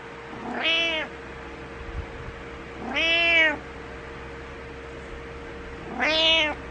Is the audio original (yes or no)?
yes